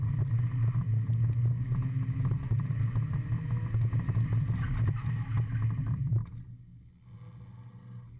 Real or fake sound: real